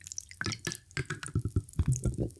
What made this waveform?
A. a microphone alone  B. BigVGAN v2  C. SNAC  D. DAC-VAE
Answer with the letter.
A